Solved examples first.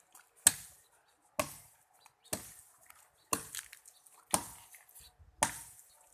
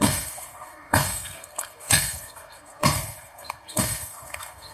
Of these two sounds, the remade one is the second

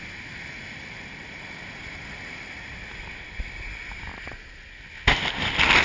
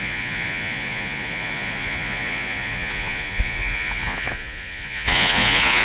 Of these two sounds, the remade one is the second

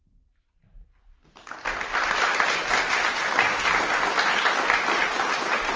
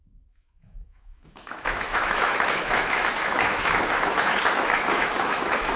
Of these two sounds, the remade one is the second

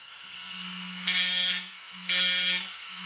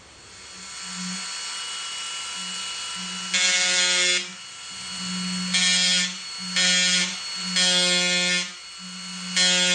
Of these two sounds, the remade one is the first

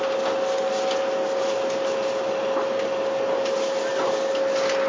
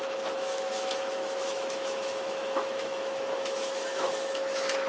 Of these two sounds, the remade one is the second